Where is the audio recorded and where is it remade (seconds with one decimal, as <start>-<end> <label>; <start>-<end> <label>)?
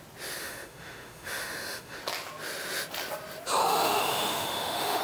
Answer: 0.0-0.4 recorded; 0.4-2.0 remade; 2.0-3.6 recorded; 3.6-5.0 remade